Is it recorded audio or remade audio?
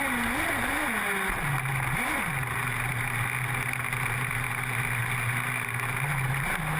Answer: recorded